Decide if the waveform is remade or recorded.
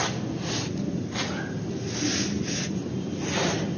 recorded